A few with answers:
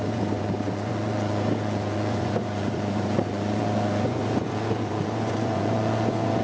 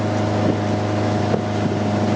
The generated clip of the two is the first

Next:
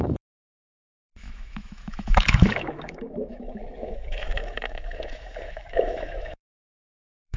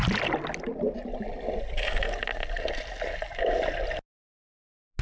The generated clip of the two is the first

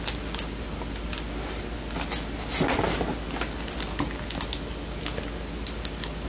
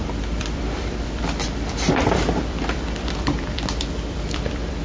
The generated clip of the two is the second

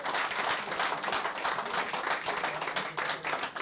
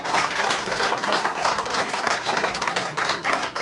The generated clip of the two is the second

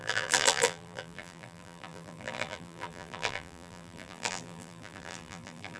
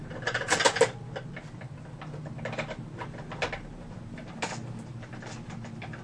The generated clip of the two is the first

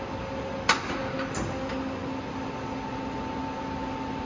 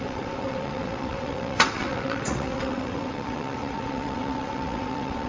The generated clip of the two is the second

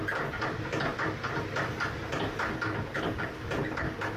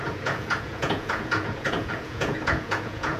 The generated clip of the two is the second